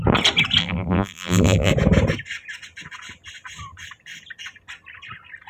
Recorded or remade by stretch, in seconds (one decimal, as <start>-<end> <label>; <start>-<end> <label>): 0.0-0.6 recorded; 0.6-1.7 remade; 1.7-5.5 recorded